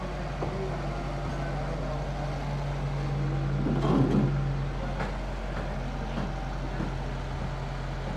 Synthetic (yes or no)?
no